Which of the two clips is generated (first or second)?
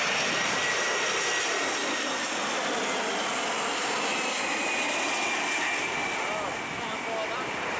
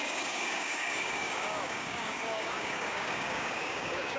second